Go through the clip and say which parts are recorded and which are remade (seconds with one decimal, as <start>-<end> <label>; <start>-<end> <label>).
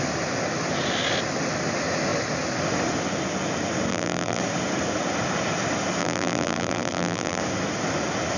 0.0-3.9 recorded; 3.9-4.4 remade; 4.4-6.0 recorded; 6.0-7.4 remade; 7.4-8.4 recorded